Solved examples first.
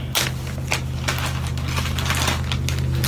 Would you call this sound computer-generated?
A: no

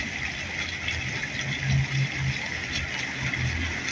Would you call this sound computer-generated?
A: no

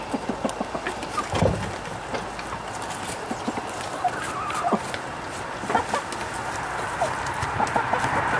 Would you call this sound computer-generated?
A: no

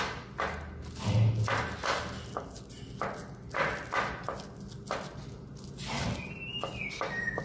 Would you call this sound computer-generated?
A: no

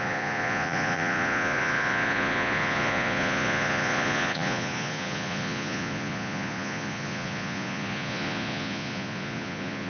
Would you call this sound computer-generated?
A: yes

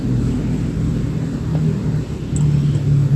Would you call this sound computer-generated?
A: no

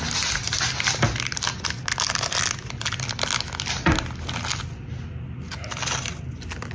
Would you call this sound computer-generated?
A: no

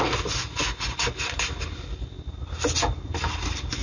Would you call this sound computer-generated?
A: no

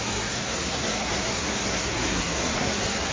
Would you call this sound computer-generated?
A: yes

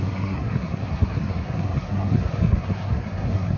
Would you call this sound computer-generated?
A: yes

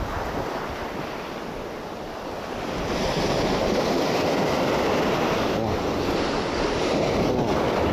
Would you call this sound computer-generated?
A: no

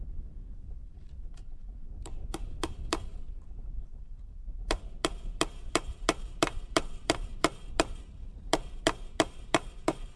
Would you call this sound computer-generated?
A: yes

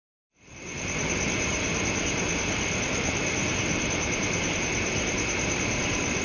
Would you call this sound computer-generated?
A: no